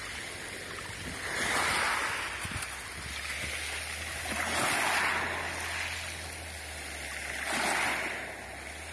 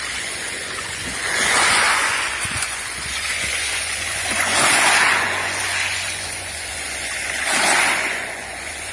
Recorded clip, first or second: first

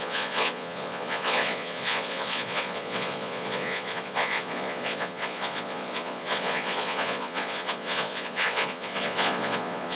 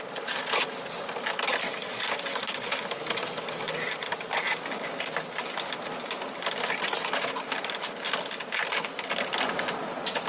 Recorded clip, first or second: second